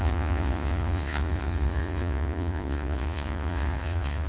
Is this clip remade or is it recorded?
remade